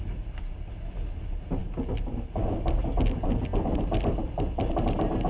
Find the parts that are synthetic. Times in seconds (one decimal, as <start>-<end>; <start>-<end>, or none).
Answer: none